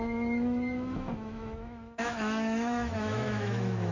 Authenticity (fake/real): fake